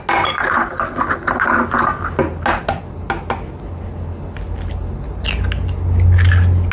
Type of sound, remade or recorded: recorded